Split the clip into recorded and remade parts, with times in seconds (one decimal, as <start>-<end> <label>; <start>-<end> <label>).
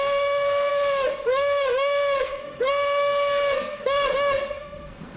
0.0-5.2 remade